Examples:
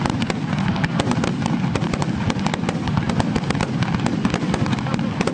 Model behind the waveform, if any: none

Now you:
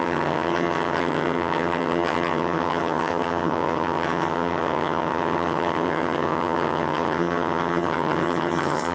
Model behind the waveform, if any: vocoder, HiFi-GAN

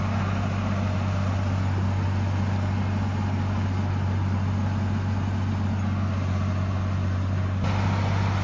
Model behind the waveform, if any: none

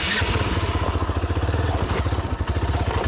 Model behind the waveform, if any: none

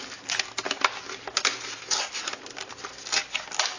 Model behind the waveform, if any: none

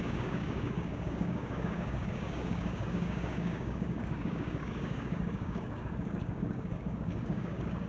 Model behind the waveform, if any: codec, DAC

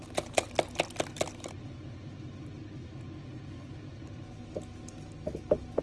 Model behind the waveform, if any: none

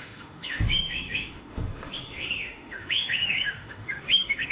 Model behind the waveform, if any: autoencoder, DAC-VAE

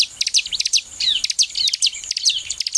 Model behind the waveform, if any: none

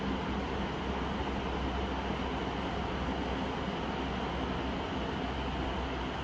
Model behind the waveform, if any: none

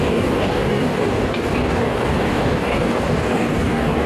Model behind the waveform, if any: codec, DAC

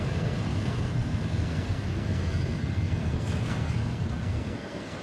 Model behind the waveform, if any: codec, SNAC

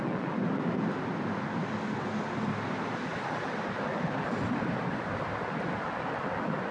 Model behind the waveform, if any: none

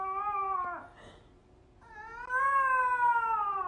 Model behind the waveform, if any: none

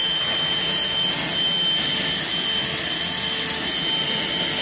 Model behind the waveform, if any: none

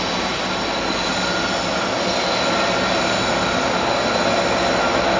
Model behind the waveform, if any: none